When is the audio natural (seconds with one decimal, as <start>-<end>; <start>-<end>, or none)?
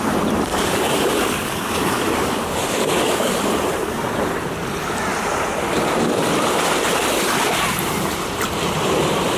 0.0-0.5; 3.4-9.4